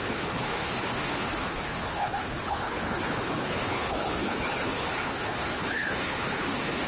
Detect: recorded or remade remade